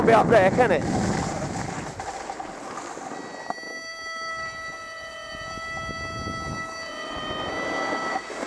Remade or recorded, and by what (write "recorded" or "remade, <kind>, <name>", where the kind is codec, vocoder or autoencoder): recorded